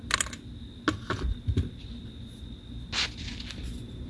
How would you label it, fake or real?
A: real